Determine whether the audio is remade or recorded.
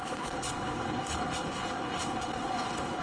remade